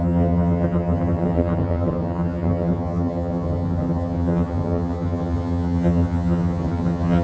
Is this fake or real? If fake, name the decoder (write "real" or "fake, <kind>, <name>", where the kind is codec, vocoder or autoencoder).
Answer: fake, vocoder, HiFi-GAN